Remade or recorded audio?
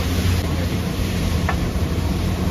remade